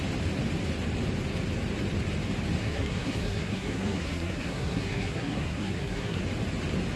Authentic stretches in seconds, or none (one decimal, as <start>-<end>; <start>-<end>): 0.0-2.6; 6.2-7.0